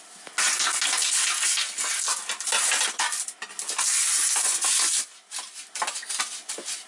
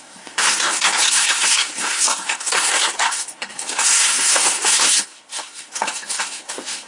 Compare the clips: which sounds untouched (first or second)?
first